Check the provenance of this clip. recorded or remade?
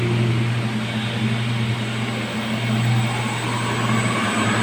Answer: recorded